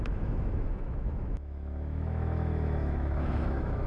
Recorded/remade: remade